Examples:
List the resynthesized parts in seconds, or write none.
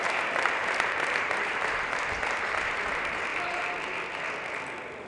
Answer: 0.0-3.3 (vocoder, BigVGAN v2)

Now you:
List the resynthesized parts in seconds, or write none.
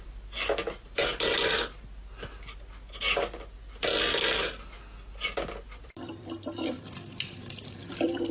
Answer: 0.0-1.0 (vocoder, BigVGAN v2); 5.8-7.1; 7.6-8.3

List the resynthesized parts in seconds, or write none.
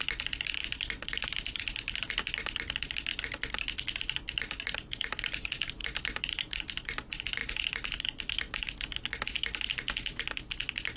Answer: 0.6-5.2 (vocoder, BigVGAN v2); 5.8-6.6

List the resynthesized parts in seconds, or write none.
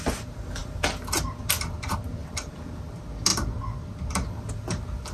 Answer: 2.2-2.7 (vocoder, BigVGAN v2)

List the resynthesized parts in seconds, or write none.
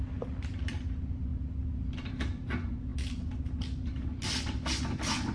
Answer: none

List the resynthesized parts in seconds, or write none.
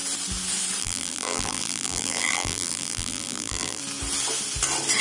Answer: 0.8-3.8 (vocoder, BigVGAN v2)